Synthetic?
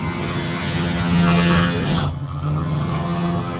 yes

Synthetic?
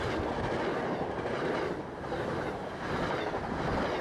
no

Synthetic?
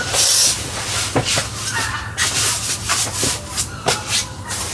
no